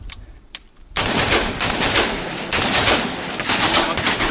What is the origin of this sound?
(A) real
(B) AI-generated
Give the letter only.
B